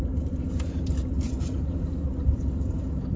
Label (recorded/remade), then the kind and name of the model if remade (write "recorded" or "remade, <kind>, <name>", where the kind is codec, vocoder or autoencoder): remade, vocoder, BigVGAN v2